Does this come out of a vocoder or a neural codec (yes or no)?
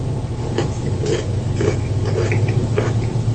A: no